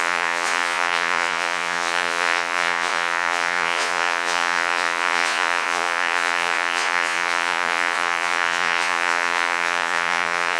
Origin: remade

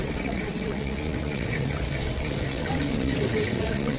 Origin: remade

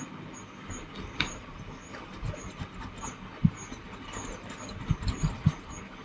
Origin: recorded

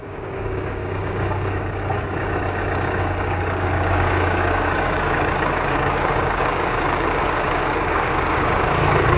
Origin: remade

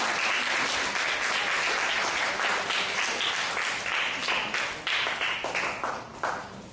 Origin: recorded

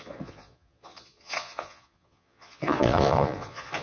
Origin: remade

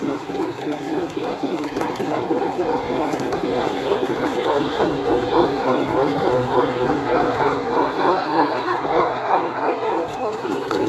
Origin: remade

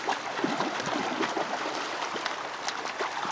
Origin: recorded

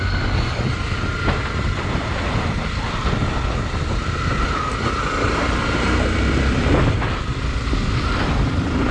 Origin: recorded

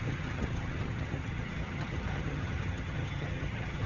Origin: remade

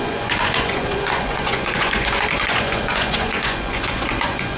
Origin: remade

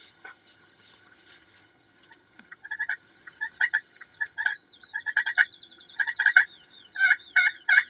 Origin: remade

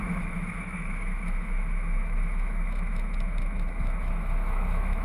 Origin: remade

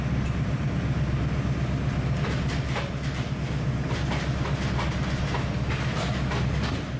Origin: recorded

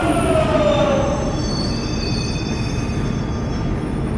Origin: recorded